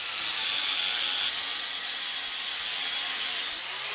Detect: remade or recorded recorded